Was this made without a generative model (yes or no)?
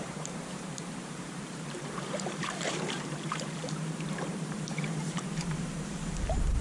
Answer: no